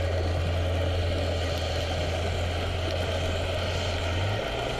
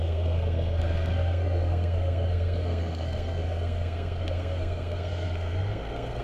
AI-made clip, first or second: second